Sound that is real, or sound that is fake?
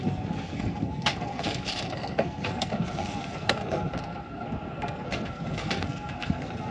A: fake